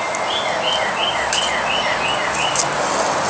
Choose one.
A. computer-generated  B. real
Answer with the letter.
B